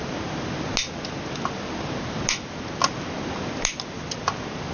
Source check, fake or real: real